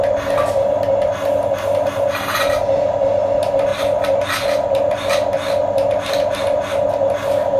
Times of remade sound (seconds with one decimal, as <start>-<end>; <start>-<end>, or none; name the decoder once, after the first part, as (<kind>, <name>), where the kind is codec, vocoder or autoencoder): none